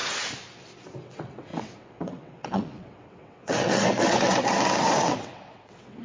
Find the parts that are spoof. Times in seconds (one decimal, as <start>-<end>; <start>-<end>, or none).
1.0-6.0